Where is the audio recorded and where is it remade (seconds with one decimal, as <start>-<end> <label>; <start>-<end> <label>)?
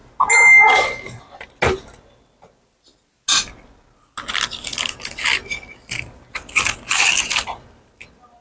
0.0-8.4 recorded